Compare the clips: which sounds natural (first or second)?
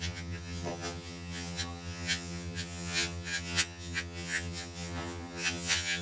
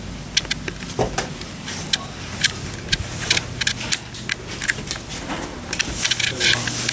second